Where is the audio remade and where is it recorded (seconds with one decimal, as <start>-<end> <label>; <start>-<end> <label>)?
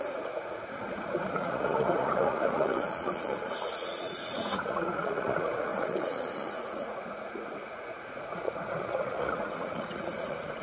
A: 0.0-10.6 remade